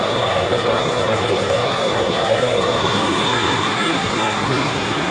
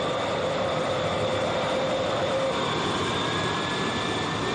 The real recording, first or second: second